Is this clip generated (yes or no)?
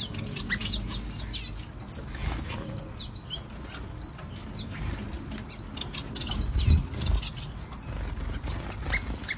no